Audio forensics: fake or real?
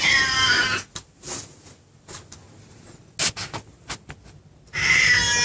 real